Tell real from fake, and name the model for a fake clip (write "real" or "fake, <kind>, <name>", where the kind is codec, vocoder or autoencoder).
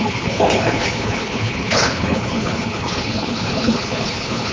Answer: fake, codec, HILCodec